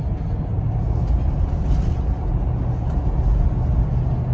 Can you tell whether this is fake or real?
real